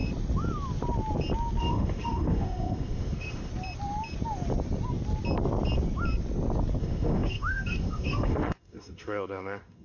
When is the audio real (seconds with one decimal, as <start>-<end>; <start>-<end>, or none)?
0.0-1.6; 3.5-6.8